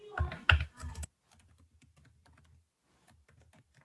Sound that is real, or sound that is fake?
real